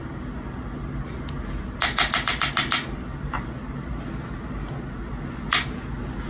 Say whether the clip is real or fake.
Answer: real